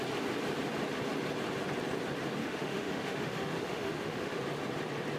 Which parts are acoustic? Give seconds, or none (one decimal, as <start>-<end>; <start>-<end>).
0.0-2.4; 4.4-5.2